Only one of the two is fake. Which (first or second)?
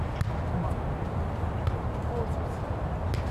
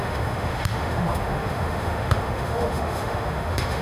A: second